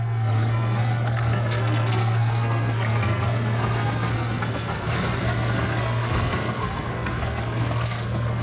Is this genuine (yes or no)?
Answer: no